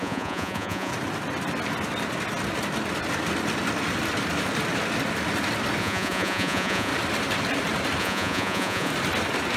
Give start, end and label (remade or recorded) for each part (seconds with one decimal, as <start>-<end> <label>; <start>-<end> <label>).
0.0-0.9 remade; 0.9-5.8 recorded; 5.8-6.9 remade; 6.9-8.0 recorded; 8.0-8.9 remade; 8.9-9.6 recorded